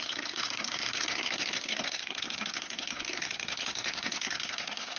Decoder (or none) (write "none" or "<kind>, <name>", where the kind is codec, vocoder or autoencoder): codec, SNAC